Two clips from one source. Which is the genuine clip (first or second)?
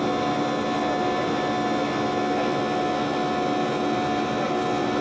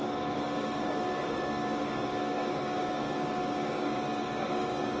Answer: first